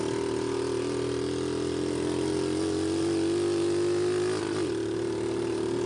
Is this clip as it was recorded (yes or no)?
yes